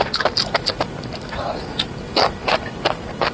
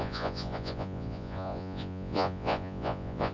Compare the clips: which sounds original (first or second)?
first